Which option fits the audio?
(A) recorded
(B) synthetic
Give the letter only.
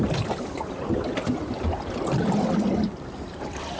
A